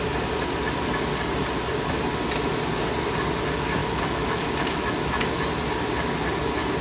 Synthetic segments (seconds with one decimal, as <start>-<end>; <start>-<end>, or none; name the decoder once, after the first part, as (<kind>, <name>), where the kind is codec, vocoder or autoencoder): 3.8-5.4 (autoencoder, DAC-VAE)